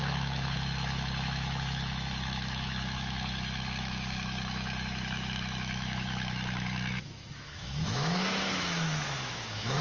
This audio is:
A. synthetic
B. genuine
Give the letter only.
A